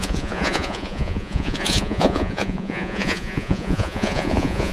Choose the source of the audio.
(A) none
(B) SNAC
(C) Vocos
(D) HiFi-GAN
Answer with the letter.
C